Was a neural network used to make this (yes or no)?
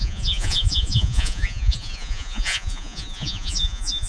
yes